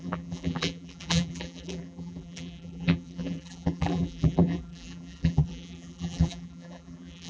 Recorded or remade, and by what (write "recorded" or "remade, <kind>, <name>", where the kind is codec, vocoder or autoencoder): remade, vocoder, BigVGAN v2